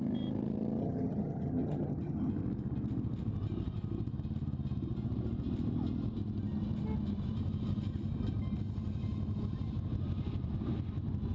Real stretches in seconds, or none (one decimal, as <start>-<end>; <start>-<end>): 0.0-0.8; 2.3-11.3